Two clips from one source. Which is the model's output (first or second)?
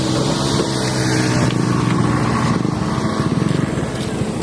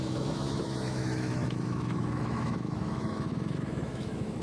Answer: second